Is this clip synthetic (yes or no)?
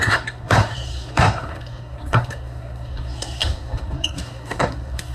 yes